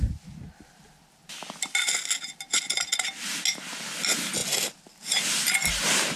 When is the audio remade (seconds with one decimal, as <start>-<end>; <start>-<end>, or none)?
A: none